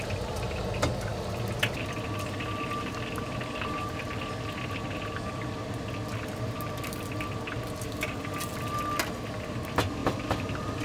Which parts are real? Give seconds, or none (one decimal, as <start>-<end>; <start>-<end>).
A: 0.0-10.8

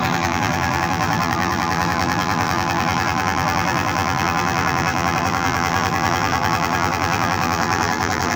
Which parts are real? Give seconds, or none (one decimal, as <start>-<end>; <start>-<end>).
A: none

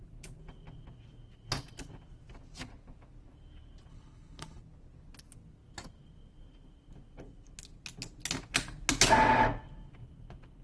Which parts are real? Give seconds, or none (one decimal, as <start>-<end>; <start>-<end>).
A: 0.0-3.9; 4.6-10.6